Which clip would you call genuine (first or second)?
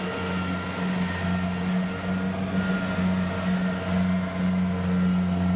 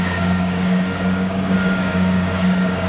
first